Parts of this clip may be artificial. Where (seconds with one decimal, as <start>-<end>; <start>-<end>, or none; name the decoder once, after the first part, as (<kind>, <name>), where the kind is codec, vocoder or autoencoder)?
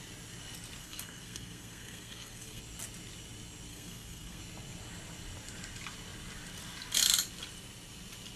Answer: 0.8-2.6 (codec, SNAC); 3.7-4.4